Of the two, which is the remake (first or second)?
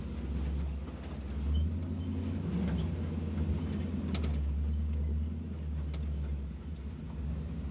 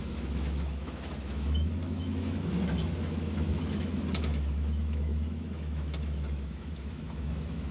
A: second